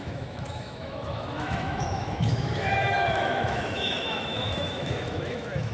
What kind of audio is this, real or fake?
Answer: fake